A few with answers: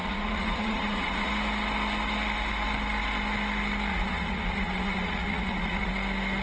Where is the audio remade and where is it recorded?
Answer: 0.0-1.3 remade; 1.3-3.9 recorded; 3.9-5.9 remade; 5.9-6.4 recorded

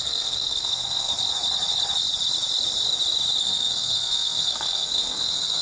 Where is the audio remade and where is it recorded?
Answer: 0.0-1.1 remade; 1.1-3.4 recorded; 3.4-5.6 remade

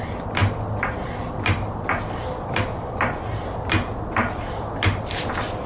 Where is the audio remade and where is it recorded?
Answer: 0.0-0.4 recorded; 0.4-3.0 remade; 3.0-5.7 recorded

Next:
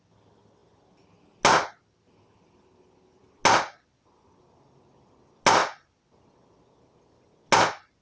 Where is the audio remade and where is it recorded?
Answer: 0.0-8.0 recorded

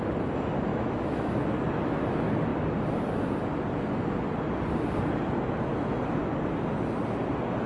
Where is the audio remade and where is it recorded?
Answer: 0.0-0.7 recorded; 0.7-1.4 remade; 1.4-7.7 recorded

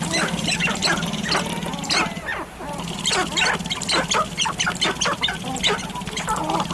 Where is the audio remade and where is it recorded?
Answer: 0.0-6.7 recorded

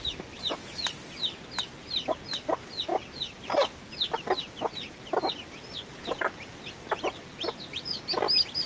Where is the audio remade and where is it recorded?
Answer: 0.0-8.7 recorded